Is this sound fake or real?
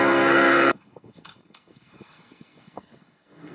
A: fake